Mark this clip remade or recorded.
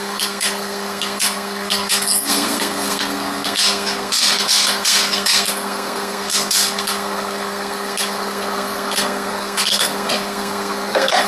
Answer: remade